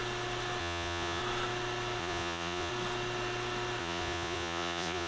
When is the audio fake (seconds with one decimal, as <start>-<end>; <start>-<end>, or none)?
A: 0.6-1.2; 2.0-2.7; 3.8-5.1